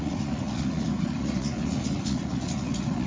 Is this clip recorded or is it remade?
remade